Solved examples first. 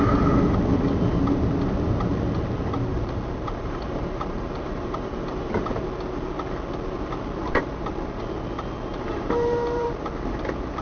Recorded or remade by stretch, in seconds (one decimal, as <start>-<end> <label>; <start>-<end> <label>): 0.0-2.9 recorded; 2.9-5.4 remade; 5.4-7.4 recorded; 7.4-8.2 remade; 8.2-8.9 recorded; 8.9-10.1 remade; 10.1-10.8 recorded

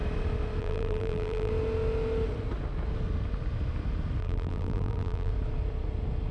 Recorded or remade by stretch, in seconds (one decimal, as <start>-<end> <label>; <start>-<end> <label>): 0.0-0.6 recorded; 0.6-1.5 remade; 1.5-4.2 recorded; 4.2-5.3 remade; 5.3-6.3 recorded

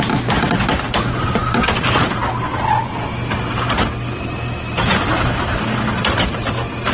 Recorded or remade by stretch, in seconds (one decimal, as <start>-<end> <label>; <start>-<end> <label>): 0.0-6.9 recorded

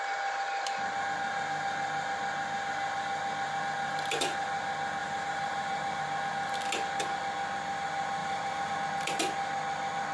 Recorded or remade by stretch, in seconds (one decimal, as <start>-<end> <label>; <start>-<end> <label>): 0.0-5.0 recorded; 5.0-6.0 remade; 6.0-8.2 recorded; 8.2-8.7 remade; 8.7-10.1 recorded